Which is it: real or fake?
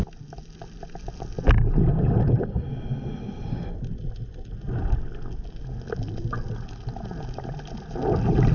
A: real